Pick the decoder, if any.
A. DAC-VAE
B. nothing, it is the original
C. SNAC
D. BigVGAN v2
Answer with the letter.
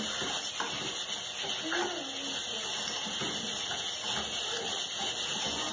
B